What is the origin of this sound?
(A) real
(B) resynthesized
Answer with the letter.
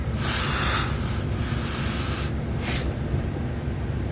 A